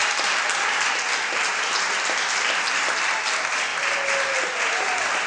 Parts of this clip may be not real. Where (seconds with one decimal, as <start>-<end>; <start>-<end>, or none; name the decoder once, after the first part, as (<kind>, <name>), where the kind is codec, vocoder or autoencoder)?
none